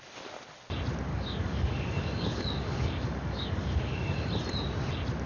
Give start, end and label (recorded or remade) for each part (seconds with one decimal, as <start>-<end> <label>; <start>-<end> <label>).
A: 0.0-1.1 recorded; 1.1-4.3 remade; 4.3-5.3 recorded